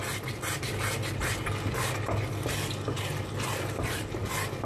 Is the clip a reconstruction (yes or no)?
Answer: no